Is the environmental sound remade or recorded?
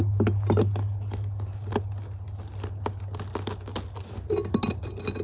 recorded